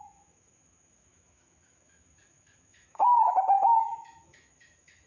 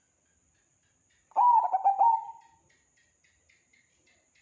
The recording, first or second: second